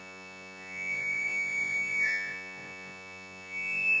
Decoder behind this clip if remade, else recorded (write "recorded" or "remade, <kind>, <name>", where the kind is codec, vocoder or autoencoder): remade, vocoder, Vocos